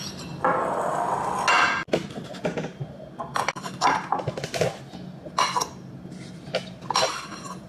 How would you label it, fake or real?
real